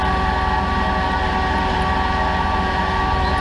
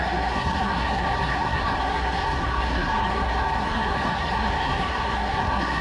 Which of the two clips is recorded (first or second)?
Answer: first